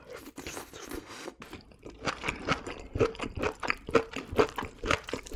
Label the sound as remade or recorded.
recorded